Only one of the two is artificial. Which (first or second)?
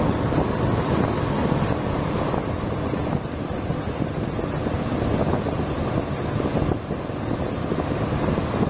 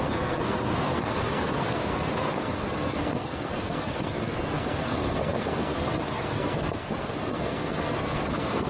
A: second